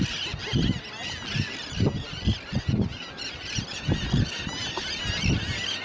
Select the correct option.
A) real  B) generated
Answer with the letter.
A